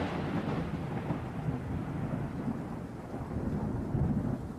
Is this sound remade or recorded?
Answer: recorded